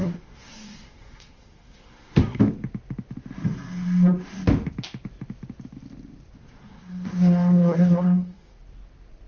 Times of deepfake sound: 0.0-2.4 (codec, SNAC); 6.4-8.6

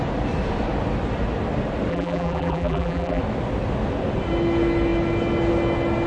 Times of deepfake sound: 1.9-3.2 (vocoder, BigVGAN v2)

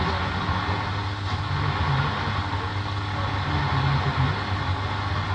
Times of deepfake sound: none

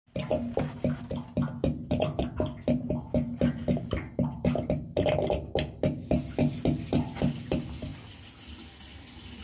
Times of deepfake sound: none